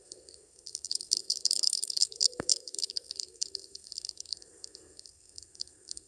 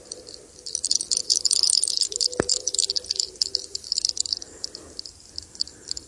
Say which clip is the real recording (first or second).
second